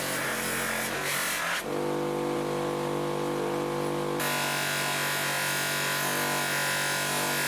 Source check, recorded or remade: recorded